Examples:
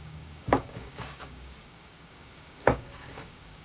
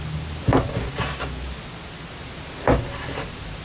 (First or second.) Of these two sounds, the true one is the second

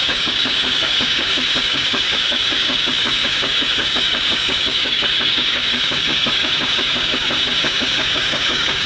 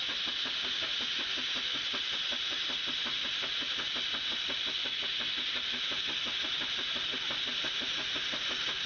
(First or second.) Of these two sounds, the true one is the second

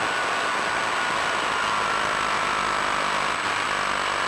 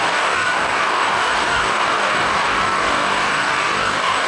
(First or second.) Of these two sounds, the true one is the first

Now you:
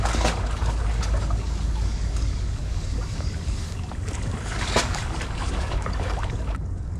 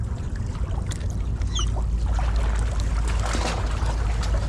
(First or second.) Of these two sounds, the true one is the second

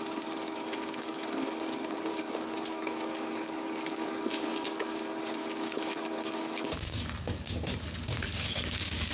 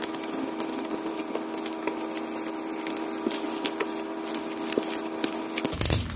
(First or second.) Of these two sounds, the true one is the second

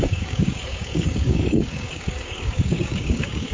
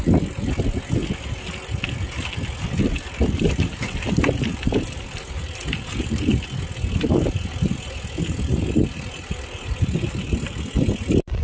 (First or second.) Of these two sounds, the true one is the second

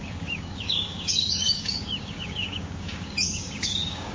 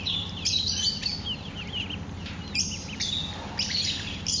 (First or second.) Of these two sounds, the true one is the second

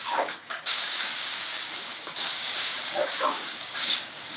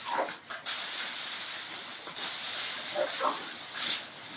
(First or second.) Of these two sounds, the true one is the second